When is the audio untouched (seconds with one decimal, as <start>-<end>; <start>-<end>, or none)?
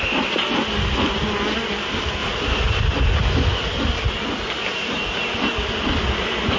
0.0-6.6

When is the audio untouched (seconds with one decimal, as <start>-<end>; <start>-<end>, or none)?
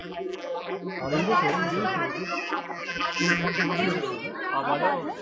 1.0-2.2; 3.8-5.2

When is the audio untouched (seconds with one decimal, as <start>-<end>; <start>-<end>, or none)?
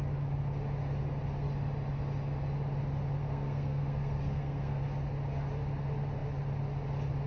0.0-3.2; 4.8-7.3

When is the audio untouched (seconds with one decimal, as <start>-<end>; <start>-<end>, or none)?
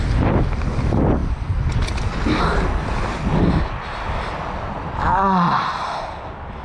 0.0-6.6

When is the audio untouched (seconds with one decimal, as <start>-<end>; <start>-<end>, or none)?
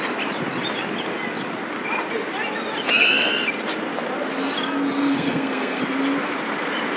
0.0-5.0; 5.8-7.0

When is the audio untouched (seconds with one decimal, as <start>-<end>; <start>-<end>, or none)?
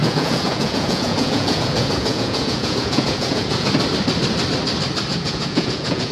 3.7-5.1